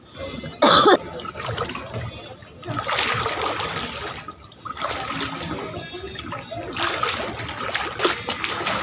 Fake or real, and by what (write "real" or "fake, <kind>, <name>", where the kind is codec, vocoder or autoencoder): real